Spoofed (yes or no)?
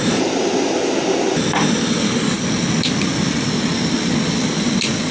no